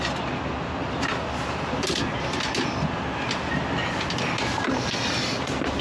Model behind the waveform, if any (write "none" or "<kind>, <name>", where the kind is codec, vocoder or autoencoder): none